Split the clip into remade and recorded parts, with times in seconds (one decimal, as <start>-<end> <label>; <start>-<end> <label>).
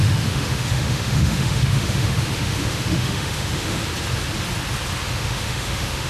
0.0-3.9 remade; 3.9-5.0 recorded; 5.0-6.1 remade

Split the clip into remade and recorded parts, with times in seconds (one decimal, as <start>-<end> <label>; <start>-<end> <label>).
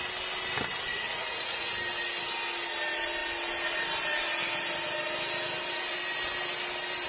0.0-0.9 recorded; 0.9-1.7 remade; 1.7-7.1 recorded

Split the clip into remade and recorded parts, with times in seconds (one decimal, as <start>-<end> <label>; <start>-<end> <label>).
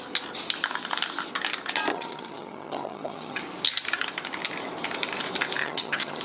0.0-1.9 recorded; 1.9-3.4 remade; 3.4-5.6 recorded; 5.6-6.2 remade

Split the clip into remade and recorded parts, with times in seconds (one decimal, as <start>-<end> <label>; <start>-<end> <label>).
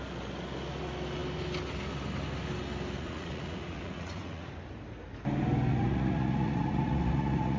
0.0-3.0 recorded; 3.0-4.5 remade; 4.5-5.7 recorded; 5.7-7.6 remade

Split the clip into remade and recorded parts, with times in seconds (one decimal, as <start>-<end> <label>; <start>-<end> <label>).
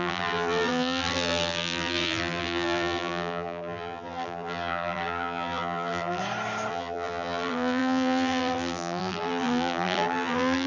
0.0-6.2 remade; 6.2-6.7 recorded; 6.7-10.7 remade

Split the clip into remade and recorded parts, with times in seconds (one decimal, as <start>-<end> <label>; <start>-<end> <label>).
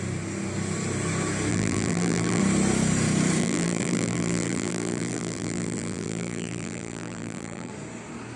0.0-1.5 recorded; 1.5-2.4 remade; 2.4-3.4 recorded; 3.4-7.7 remade; 7.7-8.4 recorded